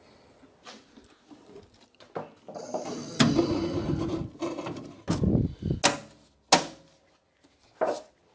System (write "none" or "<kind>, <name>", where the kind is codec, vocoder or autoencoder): none